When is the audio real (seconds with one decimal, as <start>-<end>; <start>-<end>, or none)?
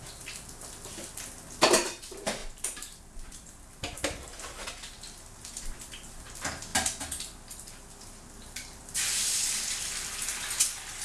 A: 0.0-11.0